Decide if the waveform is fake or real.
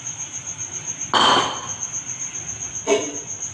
real